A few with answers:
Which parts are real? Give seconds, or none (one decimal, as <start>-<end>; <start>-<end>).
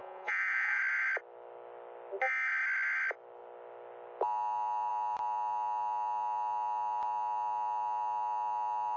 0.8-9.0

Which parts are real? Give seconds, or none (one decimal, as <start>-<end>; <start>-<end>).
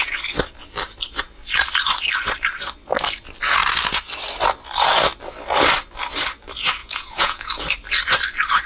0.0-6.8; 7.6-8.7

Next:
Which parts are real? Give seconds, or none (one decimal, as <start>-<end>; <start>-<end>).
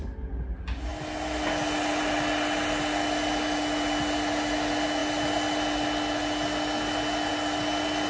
0.0-8.1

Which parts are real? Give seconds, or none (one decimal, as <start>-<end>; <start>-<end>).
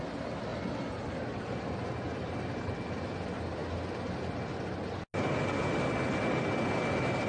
0.0-7.3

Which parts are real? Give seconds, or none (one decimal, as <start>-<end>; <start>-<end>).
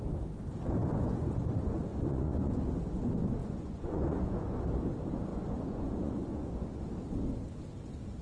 0.0-0.8; 1.3-1.9; 2.7-3.4; 4.6-5.3; 6.7-8.2